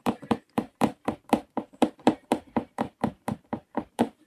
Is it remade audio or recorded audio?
remade